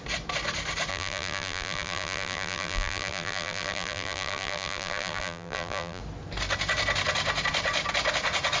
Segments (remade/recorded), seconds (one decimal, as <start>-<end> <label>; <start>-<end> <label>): 0.0-0.9 recorded; 0.9-6.0 remade; 6.0-8.6 recorded